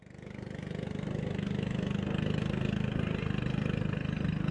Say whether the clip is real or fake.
real